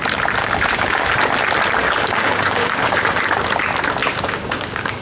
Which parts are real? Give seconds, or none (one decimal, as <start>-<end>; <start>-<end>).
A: 0.0-0.4; 1.1-1.8; 3.2-4.0